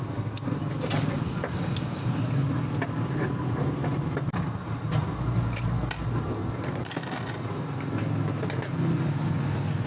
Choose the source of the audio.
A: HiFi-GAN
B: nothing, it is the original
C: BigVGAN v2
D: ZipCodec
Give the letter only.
B